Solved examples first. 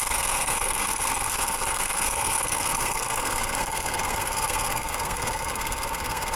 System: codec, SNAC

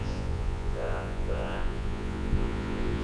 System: vocoder, Vocos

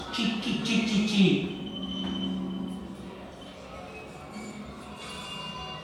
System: none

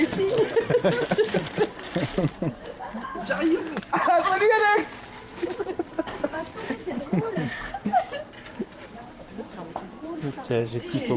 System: vocoder, BigVGAN v2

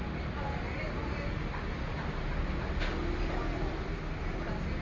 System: none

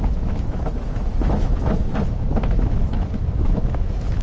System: autoencoder, DAC-VAE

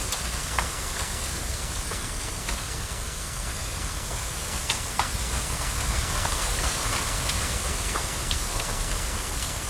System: codec, SNAC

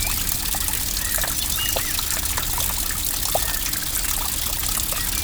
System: none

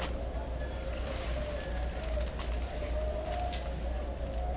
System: none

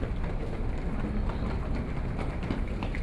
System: none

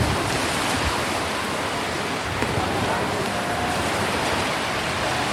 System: vocoder, BigVGAN v2